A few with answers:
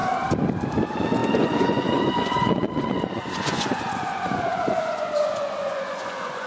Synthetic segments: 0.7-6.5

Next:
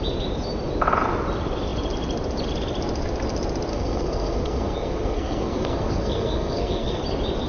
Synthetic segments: 3.7-7.0